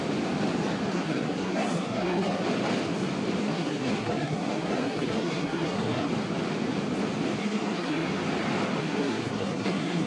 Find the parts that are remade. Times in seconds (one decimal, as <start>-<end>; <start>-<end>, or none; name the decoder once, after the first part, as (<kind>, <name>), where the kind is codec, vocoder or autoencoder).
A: 0.9-2.4 (codec, SNAC); 3.4-6.1; 7.4-8.1; 8.8-10.1